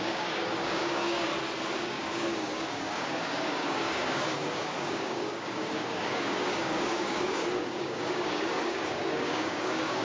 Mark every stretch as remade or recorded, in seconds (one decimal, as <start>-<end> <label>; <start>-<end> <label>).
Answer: 0.0-1.3 remade; 1.3-1.8 recorded; 1.8-10.0 remade